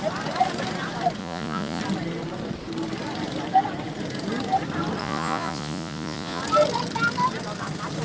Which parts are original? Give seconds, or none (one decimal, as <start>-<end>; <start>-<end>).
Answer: 0.0-1.2; 1.8-5.0; 6.4-8.0